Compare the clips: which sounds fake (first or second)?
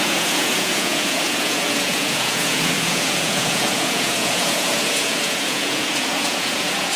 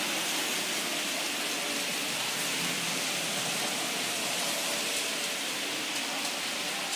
first